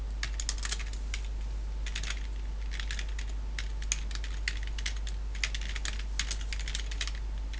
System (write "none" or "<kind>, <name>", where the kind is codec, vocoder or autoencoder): none